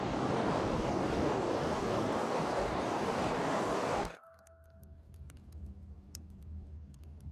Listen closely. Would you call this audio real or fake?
fake